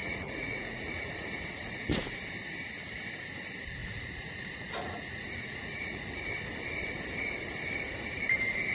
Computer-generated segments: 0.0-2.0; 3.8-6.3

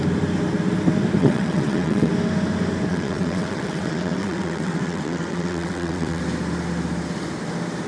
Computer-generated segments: 1.2-2.1; 2.9-6.2

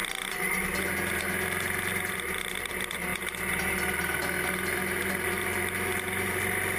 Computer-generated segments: none

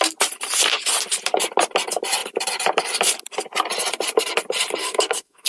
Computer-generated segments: 4.8-5.5